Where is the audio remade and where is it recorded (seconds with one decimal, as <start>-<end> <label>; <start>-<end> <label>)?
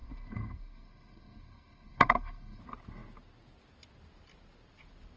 0.0-2.6 remade; 2.6-5.2 recorded